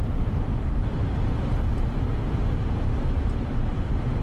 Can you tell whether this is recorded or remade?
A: recorded